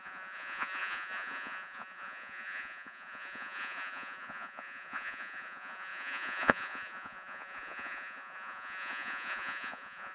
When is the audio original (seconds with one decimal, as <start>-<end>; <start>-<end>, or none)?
none

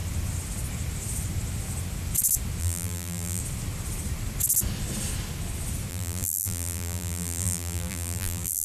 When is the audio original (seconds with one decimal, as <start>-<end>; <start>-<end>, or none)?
0.0-2.6; 3.4-5.9

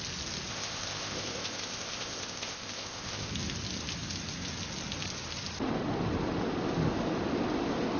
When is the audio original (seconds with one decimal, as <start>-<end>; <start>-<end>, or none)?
0.0-0.5; 3.3-8.0

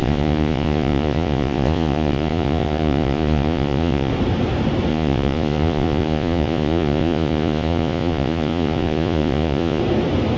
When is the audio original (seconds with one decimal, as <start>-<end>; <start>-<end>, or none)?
4.1-4.9; 9.8-10.4

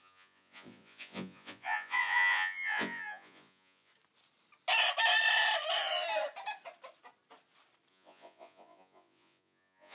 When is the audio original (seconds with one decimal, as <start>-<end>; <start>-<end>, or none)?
3.9-7.9

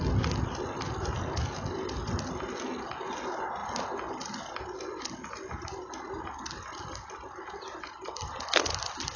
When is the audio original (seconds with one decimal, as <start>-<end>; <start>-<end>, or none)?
0.0-9.2

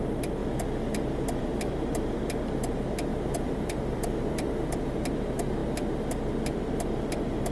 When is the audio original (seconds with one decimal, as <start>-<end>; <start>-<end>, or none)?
0.0-3.1; 4.8-7.5

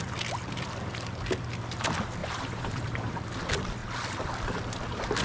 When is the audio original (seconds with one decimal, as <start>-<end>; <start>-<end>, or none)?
0.0-2.2; 3.2-5.2